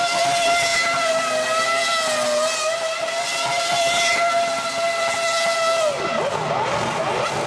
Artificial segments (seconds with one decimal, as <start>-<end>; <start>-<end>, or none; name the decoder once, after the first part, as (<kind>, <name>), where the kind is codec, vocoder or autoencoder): none